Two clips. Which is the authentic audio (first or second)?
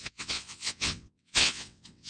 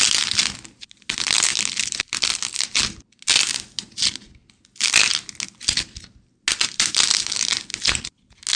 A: second